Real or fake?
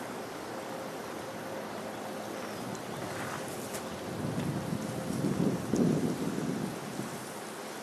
real